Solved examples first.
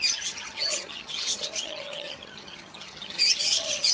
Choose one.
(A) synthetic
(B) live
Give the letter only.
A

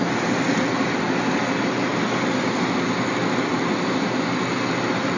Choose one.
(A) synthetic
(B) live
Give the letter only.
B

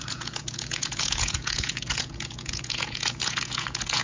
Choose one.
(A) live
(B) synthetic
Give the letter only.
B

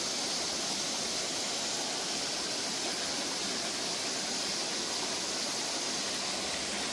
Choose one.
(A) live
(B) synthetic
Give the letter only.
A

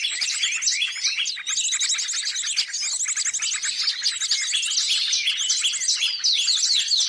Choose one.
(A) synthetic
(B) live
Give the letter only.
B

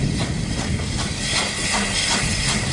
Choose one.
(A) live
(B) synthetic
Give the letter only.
A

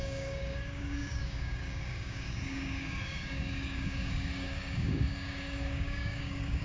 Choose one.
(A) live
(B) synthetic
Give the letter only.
B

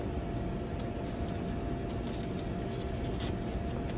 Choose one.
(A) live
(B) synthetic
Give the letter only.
A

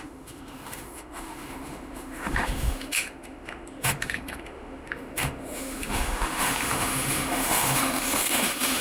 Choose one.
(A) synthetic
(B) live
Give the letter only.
A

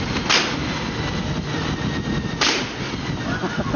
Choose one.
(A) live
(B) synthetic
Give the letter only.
A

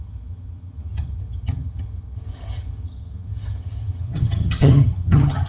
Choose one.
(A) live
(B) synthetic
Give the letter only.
B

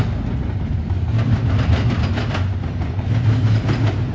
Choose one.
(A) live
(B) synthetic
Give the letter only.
A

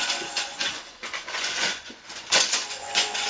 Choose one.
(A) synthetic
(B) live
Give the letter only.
A